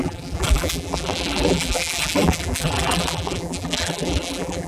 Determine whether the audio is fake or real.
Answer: fake